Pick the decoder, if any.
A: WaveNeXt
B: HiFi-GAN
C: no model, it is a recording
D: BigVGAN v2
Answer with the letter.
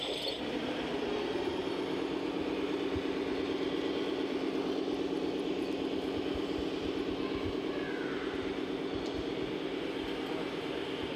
D